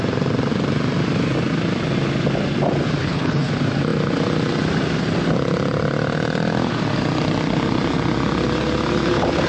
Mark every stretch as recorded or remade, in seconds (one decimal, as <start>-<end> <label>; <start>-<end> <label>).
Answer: 0.0-3.0 recorded; 3.0-3.5 remade; 3.5-9.5 recorded